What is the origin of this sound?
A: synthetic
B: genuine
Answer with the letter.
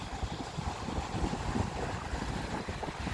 B